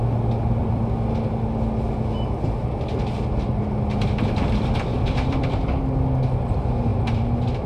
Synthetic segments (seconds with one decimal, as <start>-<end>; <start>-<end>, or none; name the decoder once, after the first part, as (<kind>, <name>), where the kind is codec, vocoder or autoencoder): 0.6-1.3 (vocoder, BigVGAN v2); 4.9-5.8